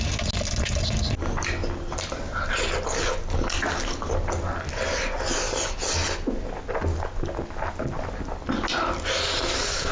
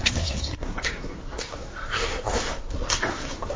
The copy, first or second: second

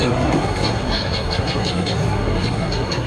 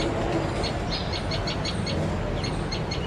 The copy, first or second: first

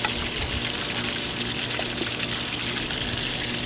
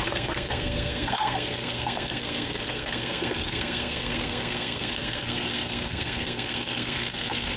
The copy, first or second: second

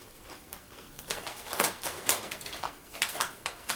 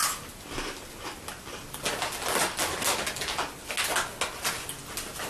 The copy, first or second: first